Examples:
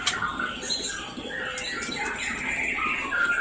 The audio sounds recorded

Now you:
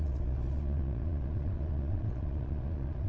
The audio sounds remade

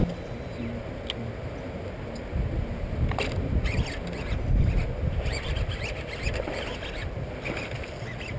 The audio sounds recorded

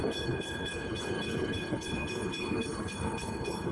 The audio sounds remade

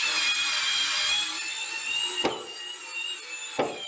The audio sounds recorded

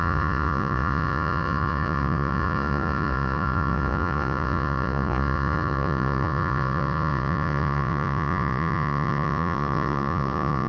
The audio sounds remade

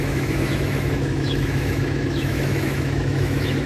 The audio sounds remade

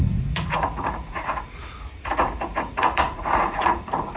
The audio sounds remade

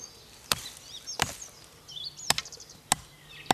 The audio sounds recorded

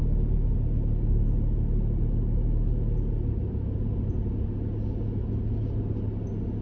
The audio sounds recorded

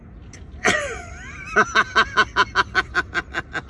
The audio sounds recorded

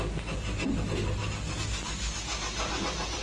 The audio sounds recorded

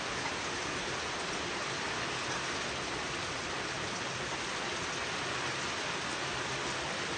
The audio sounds recorded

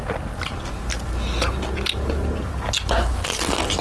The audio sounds recorded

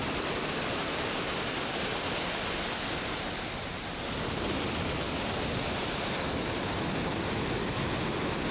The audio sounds recorded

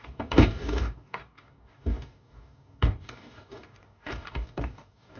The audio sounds remade